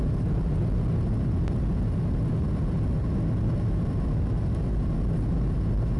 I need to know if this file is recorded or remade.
recorded